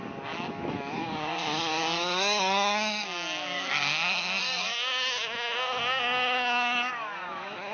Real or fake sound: fake